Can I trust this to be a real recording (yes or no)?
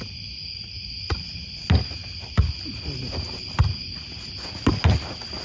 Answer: yes